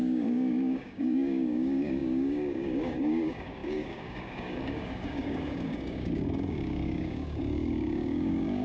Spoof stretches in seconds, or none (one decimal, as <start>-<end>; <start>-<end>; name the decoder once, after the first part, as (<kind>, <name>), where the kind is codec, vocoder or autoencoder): 0.0-8.6 (codec, DAC)